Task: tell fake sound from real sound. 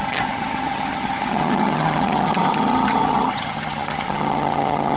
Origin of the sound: fake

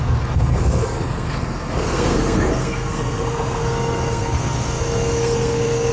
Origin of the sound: fake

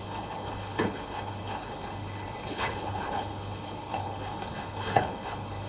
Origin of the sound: fake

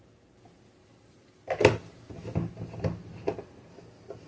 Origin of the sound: real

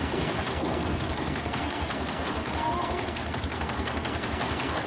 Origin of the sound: fake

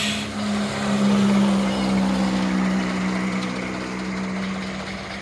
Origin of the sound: real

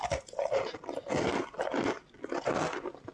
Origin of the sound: real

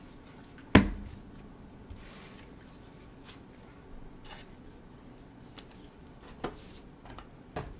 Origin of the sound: real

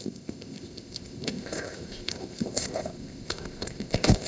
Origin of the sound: fake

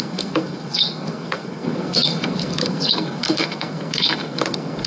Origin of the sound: fake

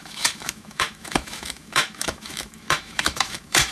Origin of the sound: fake